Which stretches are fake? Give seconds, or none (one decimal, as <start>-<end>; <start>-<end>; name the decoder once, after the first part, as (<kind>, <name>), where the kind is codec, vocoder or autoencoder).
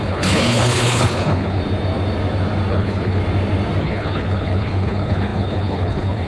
0.0-1.6 (codec, HILCodec); 2.7-3.2; 3.8-6.3